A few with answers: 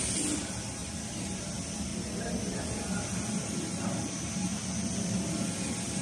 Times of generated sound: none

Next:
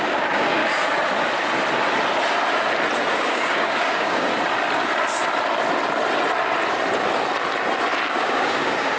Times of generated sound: 0.0-0.6 (codec, DAC); 3.0-4.3; 8.1-9.0